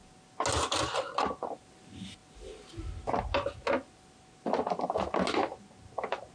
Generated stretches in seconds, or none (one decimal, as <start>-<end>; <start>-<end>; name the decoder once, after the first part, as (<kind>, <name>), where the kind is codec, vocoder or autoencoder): none